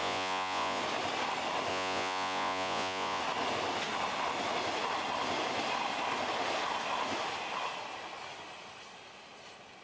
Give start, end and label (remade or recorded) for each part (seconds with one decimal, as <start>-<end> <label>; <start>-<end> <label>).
0.0-0.8 remade; 0.8-1.7 recorded; 1.7-3.2 remade; 3.2-9.8 recorded